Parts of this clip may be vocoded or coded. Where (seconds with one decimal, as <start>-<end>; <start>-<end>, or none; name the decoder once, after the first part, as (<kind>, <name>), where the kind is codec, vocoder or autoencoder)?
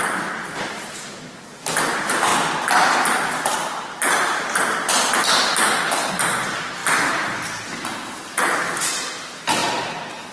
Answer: none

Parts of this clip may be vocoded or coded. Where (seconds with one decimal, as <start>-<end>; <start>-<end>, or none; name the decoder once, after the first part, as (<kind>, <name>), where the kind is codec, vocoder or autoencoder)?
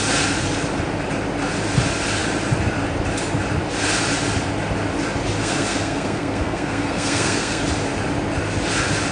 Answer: 5.4-7.6 (codec, SNAC)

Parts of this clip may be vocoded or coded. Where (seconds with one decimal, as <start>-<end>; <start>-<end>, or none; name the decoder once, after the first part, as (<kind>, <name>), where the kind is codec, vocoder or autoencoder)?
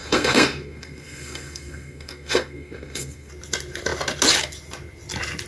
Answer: 0.0-3.3 (codec, SNAC)